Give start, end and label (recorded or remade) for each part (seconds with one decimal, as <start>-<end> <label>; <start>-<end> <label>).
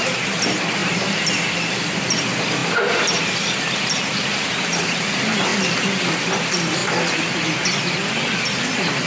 0.0-5.5 remade; 5.5-6.1 recorded; 6.1-6.8 remade; 6.8-7.9 recorded; 7.9-9.1 remade